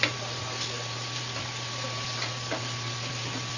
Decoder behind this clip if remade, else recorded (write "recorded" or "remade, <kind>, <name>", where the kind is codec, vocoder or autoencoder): recorded